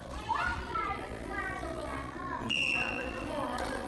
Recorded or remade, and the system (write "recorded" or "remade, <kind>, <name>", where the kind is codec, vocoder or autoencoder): remade, vocoder, Vocos